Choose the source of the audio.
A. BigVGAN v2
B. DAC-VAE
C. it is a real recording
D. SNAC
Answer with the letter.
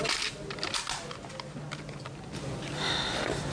C